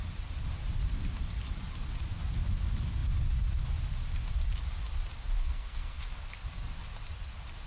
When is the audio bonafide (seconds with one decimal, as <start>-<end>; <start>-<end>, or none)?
0.0-5.4; 6.2-7.7